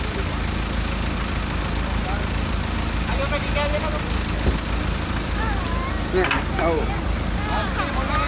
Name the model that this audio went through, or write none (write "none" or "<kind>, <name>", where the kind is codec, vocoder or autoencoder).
none